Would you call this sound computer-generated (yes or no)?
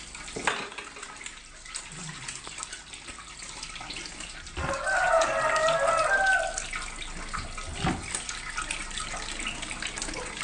no